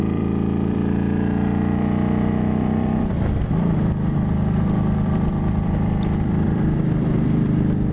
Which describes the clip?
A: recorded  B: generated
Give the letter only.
B